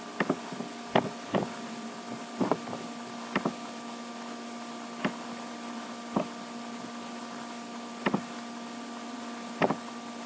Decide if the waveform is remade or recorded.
recorded